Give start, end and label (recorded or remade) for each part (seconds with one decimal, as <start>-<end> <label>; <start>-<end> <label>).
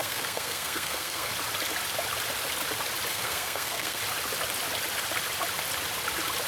0.0-1.3 remade; 1.3-3.1 recorded; 3.1-4.0 remade; 4.0-6.5 recorded